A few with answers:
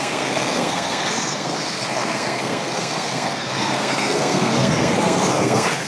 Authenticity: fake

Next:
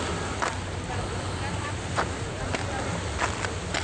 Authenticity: real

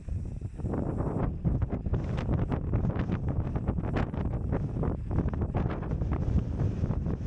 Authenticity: real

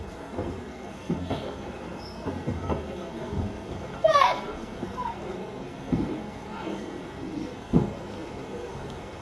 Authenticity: fake